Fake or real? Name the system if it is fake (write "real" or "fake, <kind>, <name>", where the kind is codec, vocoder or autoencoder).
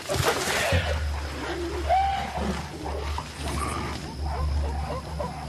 real